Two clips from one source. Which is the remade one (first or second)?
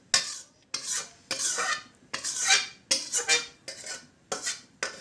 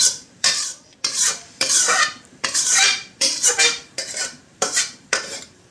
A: second